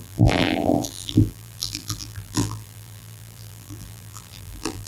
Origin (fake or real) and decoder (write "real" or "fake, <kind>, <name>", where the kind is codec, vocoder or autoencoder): fake, vocoder, BigVGAN v2